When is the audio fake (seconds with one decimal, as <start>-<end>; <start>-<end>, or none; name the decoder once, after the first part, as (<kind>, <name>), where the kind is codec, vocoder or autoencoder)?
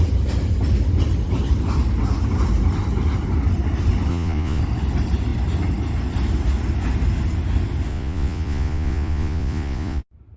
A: 4.1-4.6 (vocoder, Vocos); 7.9-10.0